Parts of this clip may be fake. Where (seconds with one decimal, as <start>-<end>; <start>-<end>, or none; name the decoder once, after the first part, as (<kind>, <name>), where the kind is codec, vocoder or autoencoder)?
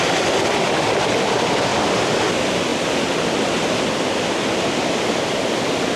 none